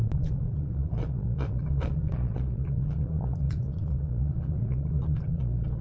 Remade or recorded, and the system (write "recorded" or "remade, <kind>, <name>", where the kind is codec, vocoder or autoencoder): remade, vocoder, Vocos